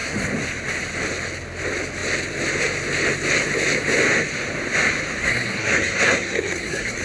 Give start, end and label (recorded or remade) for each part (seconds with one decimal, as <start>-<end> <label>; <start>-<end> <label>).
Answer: 0.0-5.2 recorded; 5.2-7.0 remade